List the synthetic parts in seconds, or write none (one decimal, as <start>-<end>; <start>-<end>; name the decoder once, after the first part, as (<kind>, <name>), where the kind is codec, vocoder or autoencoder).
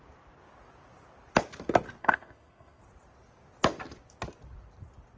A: 2.0-2.8 (codec, SNAC)